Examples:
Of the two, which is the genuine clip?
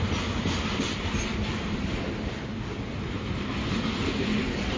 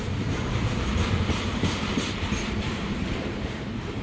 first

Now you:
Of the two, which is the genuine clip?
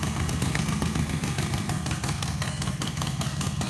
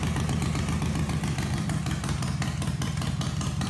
second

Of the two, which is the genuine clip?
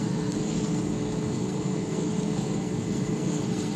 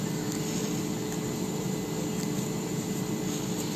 second